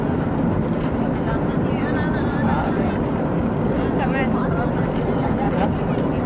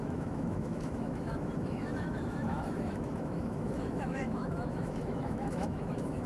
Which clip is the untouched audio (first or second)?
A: first